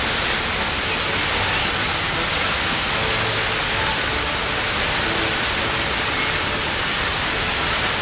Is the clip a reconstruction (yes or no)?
no